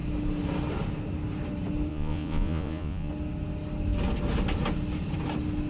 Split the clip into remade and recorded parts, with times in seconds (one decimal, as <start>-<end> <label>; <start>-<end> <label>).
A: 0.0-1.9 recorded; 1.9-3.1 remade; 3.1-5.7 recorded